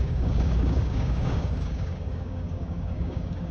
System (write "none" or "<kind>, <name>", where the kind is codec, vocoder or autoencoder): codec, DAC